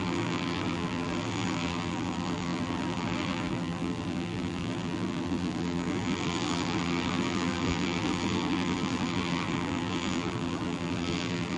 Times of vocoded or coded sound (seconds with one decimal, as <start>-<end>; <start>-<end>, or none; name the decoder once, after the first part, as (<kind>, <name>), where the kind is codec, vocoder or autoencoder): 0.0-11.6 (vocoder, BigVGAN v2)

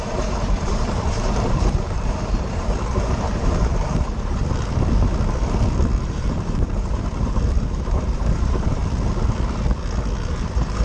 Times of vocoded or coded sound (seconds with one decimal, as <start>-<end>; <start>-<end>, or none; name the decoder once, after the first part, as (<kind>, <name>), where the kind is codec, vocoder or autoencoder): 0.0-4.4 (vocoder, BigVGAN v2); 6.0-8.8; 10.3-10.8

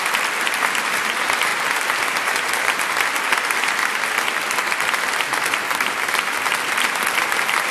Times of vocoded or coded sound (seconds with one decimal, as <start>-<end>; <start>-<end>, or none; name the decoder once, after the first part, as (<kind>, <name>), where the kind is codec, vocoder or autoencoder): 0.0-1.5 (vocoder, BigVGAN v2); 4.6-7.7

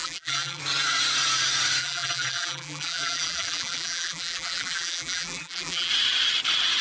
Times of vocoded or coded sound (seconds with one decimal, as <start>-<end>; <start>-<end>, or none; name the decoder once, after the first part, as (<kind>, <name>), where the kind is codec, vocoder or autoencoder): 0.0-0.6 (vocoder, BigVGAN v2); 1.8-5.9

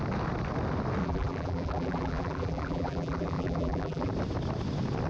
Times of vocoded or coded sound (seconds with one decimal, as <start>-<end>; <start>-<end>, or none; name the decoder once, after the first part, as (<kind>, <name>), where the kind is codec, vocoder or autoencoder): 1.0-4.1 (vocoder, BigVGAN v2)

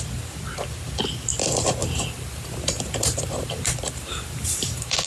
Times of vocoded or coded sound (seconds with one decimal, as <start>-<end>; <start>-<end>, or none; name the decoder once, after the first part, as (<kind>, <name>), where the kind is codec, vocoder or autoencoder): 1.8-5.1 (vocoder, BigVGAN v2)

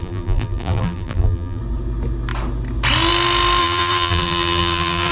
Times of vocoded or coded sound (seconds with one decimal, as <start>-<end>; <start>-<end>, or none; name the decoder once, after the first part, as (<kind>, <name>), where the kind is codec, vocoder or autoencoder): 0.0-1.6 (vocoder, BigVGAN v2); 3.6-5.1

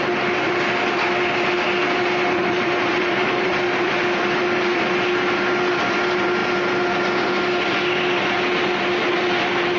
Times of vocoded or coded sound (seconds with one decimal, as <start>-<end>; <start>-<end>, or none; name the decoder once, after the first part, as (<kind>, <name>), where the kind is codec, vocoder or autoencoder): 2.4-3.5 (vocoder, BigVGAN v2)